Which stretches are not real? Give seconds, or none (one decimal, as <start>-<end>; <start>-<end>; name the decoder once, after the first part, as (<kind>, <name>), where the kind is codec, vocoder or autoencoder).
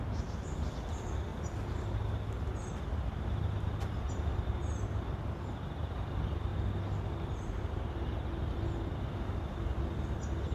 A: none